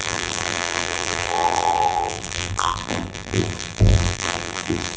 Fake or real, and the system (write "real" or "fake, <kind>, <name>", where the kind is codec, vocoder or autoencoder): fake, vocoder, BigVGAN v2